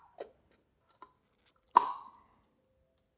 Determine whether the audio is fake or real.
real